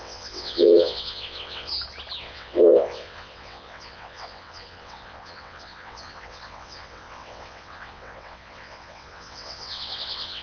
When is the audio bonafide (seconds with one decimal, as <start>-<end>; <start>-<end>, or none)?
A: 1.7-2.2